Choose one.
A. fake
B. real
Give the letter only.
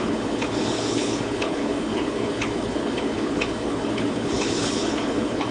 A